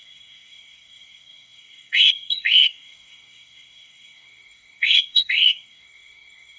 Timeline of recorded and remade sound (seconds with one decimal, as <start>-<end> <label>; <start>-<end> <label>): 0.0-6.6 remade